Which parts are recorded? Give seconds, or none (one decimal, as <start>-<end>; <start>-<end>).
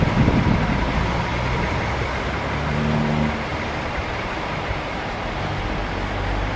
0.0-3.5; 5.5-6.6